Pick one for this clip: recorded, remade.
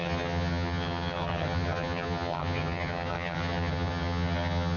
remade